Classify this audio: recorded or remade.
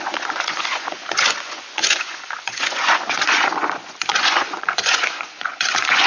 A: remade